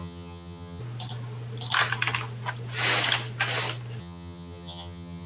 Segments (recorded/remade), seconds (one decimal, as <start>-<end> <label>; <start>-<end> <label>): 0.0-0.8 remade; 0.8-4.0 recorded; 4.0-5.3 remade